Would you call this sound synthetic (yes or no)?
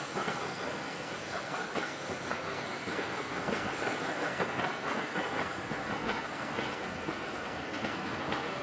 yes